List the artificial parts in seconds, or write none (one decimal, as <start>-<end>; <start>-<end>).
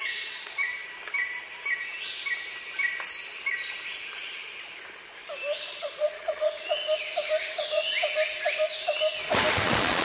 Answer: 0.0-0.7; 5.8-6.8; 7.4-7.9; 9.5-10.0